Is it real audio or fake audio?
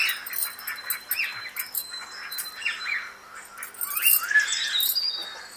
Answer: real